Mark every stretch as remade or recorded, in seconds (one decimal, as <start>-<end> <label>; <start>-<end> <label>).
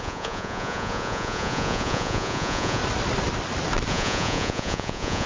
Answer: 0.0-2.8 remade; 2.8-3.9 recorded; 3.9-5.3 remade